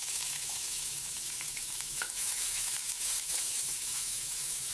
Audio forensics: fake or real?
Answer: fake